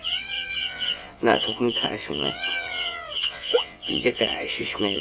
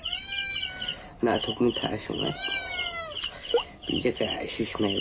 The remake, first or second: first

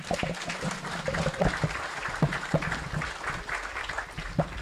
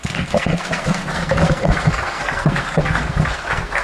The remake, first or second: second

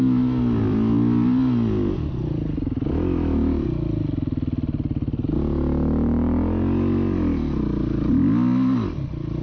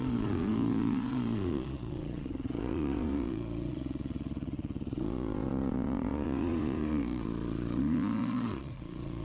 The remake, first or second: second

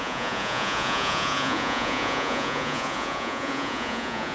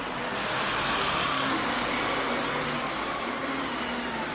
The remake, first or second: first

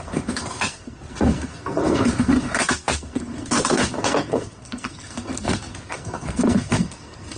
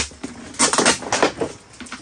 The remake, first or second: first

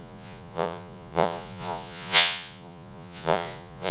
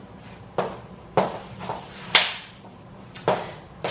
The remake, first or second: first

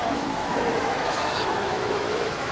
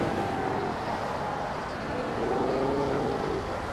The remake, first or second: first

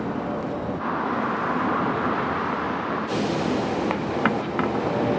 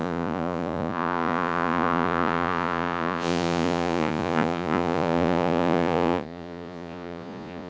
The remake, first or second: second